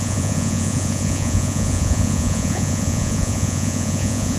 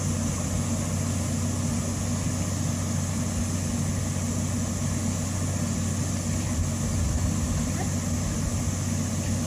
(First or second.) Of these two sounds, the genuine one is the second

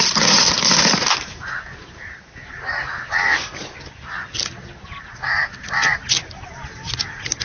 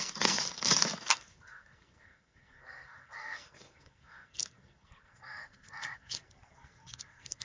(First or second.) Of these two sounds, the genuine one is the first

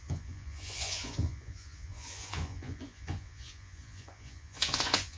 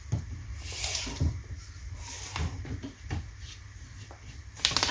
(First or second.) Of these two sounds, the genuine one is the second